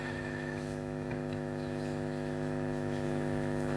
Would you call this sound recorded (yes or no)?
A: no